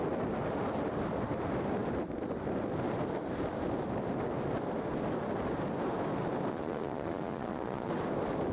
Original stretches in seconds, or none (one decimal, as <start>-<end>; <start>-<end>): 0.0-6.5; 7.9-8.5